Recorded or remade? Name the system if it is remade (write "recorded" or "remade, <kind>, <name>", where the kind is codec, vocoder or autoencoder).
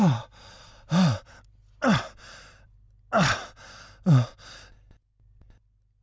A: recorded